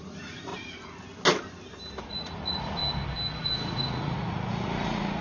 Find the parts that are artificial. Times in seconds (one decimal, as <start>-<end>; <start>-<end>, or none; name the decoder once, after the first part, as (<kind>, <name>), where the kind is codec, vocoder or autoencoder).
0.0-0.5 (vocoder, Vocos); 2.0-2.8; 3.3-5.2